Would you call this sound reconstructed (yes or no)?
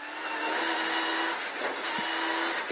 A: no